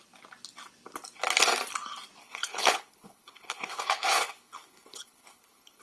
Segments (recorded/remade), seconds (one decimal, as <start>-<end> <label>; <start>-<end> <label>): 0.0-2.2 recorded; 2.2-5.8 remade